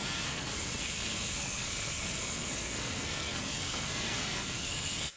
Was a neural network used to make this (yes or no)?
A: yes